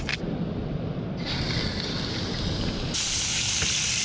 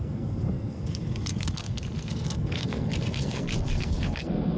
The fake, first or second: second